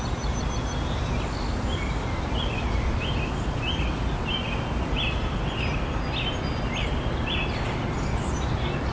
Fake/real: real